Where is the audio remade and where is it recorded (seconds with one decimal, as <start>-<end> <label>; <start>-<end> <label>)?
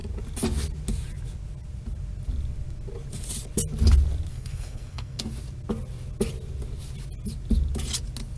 0.0-4.3 recorded; 4.3-5.2 remade; 5.2-8.4 recorded